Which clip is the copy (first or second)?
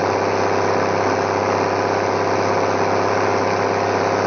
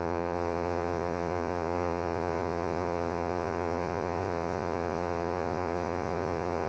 second